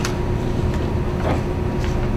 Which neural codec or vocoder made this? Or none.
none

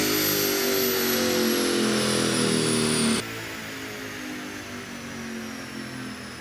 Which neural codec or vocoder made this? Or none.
none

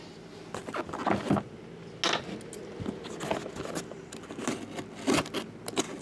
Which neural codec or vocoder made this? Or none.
none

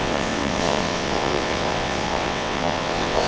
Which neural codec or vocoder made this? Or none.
vocoder, WaveNeXt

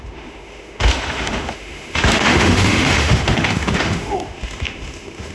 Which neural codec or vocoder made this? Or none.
autoencoder, DAC-VAE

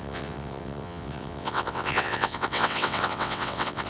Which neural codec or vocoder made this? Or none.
vocoder, WaveNeXt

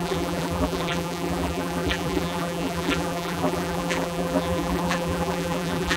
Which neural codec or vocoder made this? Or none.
vocoder, BigVGAN v2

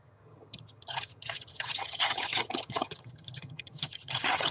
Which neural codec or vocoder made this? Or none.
vocoder, HiFi-GAN